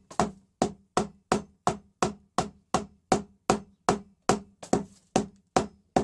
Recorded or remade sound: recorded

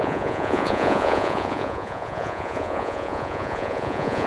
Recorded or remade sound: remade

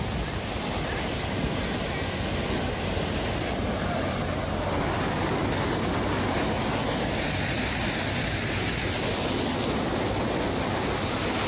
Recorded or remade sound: recorded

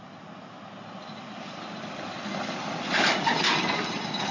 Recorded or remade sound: recorded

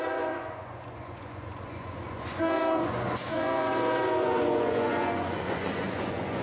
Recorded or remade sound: remade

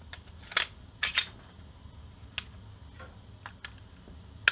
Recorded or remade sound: recorded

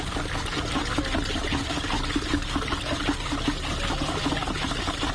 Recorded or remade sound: recorded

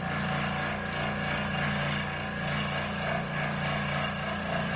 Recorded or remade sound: recorded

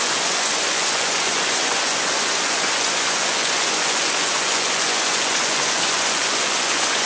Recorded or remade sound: remade